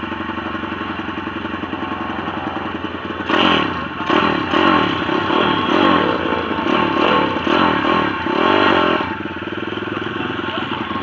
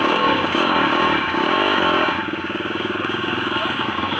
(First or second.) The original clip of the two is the first